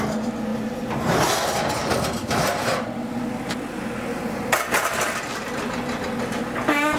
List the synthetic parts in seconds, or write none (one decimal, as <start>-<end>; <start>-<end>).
1.8-6.0